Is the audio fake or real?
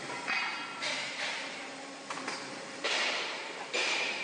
fake